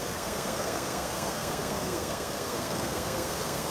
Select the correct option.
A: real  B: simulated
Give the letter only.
B